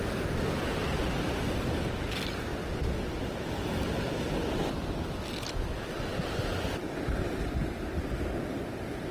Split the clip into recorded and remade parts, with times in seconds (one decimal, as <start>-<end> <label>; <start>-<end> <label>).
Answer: 0.0-2.5 remade; 2.5-3.1 recorded; 3.1-4.4 remade; 4.4-5.5 recorded; 5.5-9.1 remade